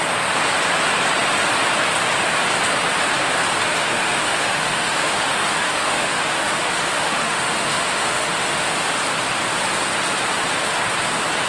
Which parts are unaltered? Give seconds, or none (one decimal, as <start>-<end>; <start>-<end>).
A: 0.0-3.7; 8.9-11.5